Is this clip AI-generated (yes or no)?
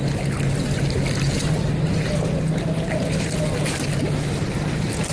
no